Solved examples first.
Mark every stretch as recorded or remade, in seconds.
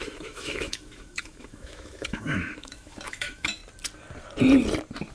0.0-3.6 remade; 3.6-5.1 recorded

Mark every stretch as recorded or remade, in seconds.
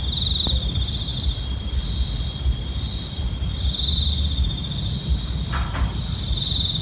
0.0-6.8 recorded